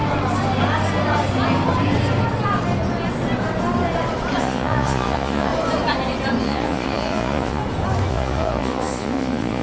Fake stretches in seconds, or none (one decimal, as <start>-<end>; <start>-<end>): 4.4-5.5; 6.4-7.6; 8.1-9.6

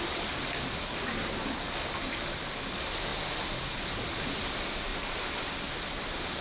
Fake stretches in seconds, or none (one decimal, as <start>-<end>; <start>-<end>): 4.9-6.4

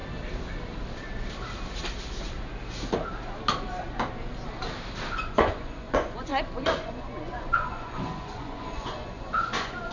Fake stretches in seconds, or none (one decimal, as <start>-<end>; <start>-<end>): 5.1-6.3; 6.8-9.9

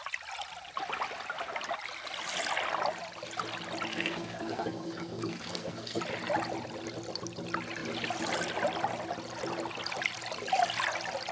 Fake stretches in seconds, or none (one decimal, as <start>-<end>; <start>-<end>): 3.9-6.0

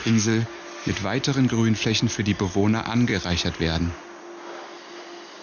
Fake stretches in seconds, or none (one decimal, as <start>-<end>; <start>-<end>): 0.0-0.5